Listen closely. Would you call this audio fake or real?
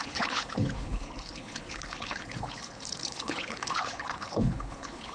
fake